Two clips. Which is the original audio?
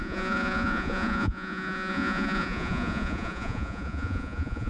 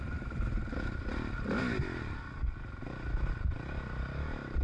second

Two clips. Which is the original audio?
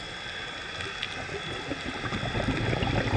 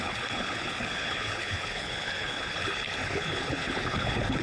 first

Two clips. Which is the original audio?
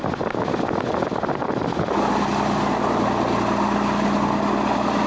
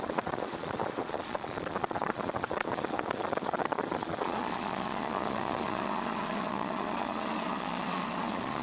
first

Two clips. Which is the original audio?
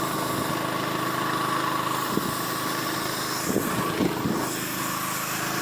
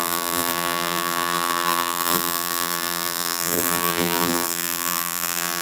first